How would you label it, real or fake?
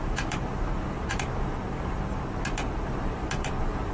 fake